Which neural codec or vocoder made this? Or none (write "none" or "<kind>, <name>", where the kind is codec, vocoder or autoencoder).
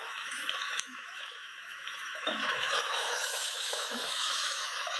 autoencoder, DAC-VAE